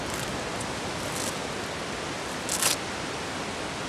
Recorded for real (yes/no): yes